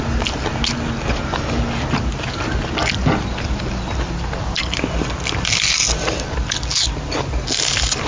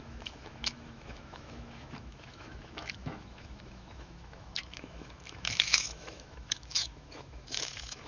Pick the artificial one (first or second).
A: second